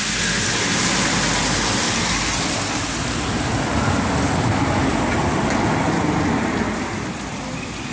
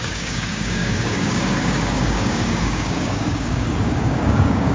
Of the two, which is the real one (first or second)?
first